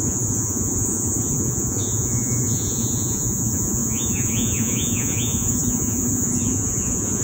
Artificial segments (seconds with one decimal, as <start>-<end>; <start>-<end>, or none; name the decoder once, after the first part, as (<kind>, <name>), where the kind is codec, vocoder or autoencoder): 0.0-7.2 (vocoder, Vocos)